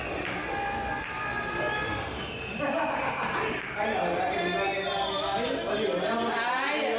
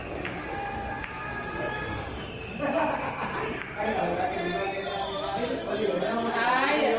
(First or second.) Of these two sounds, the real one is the first